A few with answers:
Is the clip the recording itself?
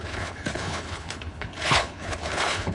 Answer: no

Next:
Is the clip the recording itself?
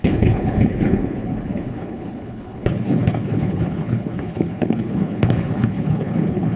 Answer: no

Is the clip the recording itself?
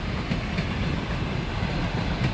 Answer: yes